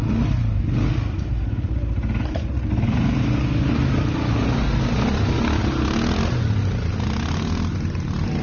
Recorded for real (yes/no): yes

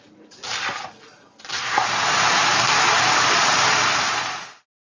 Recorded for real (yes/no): yes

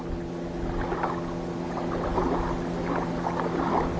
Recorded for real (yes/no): yes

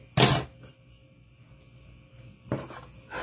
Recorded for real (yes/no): yes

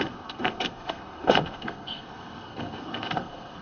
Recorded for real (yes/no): no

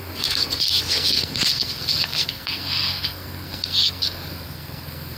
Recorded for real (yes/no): no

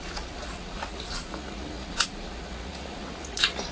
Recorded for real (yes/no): no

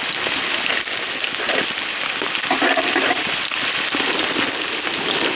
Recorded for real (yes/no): yes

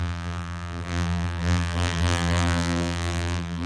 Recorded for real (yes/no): no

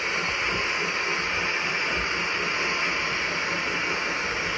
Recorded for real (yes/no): yes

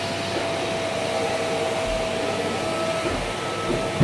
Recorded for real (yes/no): yes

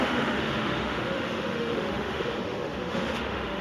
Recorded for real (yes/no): no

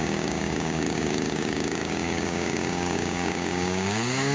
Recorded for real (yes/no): no